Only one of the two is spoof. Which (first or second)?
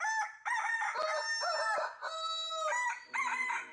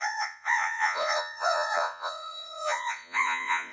second